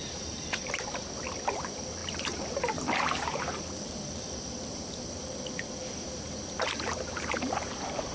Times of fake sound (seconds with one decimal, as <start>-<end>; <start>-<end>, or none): 0.0-8.1